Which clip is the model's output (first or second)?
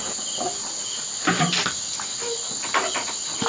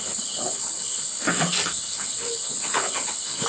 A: second